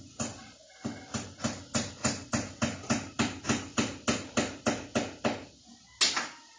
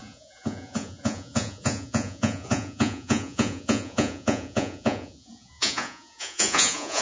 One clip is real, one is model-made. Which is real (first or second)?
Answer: first